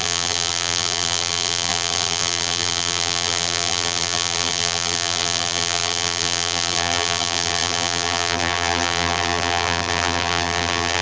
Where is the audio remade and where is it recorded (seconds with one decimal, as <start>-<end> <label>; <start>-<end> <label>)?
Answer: 0.0-11.0 remade